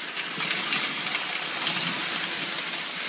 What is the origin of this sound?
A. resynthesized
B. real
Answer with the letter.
B